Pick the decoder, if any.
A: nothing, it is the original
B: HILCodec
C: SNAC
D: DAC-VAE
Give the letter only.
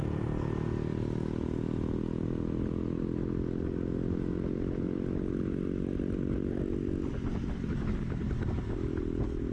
A